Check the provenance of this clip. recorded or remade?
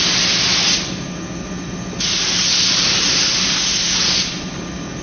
recorded